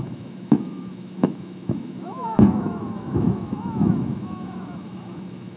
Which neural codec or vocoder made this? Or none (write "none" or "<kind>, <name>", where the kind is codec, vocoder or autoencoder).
autoencoder, DAC-VAE